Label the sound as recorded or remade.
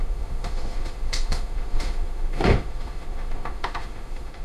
remade